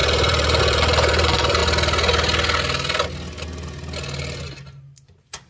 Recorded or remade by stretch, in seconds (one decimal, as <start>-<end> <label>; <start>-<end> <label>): 0.0-1.6 remade; 1.6-4.9 recorded; 4.9-5.5 remade